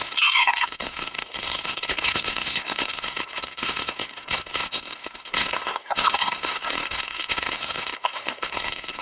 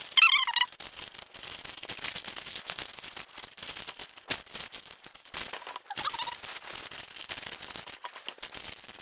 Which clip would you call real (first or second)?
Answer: second